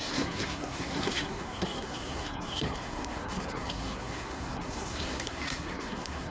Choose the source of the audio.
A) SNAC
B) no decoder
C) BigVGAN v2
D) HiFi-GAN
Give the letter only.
A